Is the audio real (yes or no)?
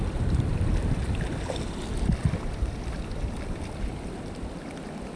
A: yes